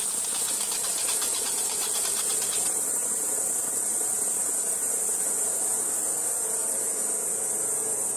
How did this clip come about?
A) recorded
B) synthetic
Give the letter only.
B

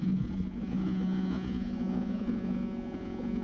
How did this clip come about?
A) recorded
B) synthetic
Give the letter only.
B